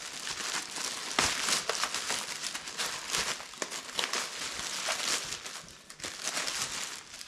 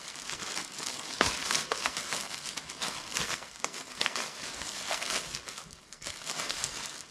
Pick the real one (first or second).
first